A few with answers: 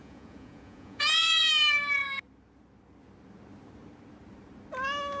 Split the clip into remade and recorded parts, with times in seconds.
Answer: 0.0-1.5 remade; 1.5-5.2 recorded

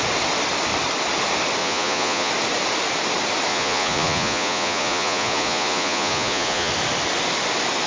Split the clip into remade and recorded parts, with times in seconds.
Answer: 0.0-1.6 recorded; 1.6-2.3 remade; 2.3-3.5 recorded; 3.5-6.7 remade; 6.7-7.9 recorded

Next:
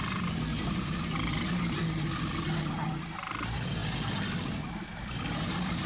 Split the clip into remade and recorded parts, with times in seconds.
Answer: 0.0-5.9 recorded

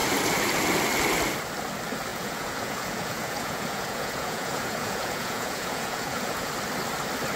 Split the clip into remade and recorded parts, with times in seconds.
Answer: 0.0-2.1 recorded; 2.1-6.5 remade; 6.5-7.4 recorded

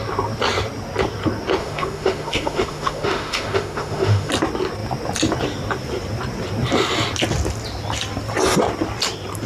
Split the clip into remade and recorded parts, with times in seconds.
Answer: 0.0-1.6 recorded; 1.6-4.3 remade; 4.3-9.5 recorded

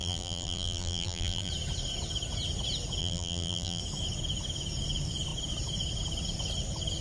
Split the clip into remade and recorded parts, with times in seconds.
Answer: 0.0-1.5 remade; 1.5-3.0 recorded; 3.0-3.8 remade; 3.8-7.0 recorded